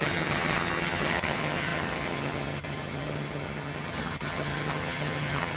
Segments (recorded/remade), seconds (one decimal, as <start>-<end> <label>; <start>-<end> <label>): 0.0-5.6 remade